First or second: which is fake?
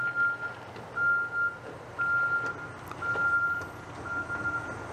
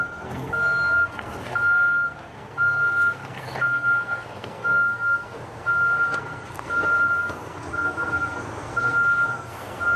second